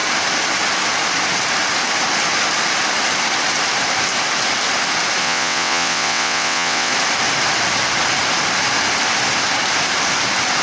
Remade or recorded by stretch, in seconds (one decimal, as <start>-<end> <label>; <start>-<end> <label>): 0.0-5.2 recorded; 5.2-6.9 remade; 6.9-10.6 recorded